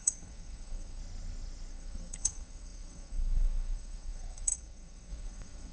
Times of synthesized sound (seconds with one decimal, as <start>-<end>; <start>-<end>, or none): 0.0-1.0; 1.7-5.7